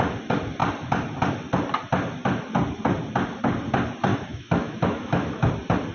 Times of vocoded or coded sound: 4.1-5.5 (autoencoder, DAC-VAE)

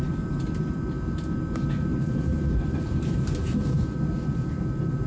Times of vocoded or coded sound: 1.9-4.0 (vocoder, BigVGAN v2)

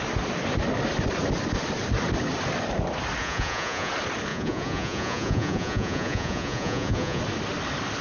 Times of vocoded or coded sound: 3.2-3.9 (vocoder, Vocos); 4.3-7.2